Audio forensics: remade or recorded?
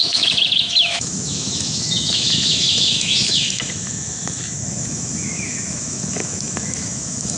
remade